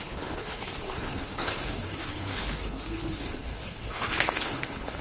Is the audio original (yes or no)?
no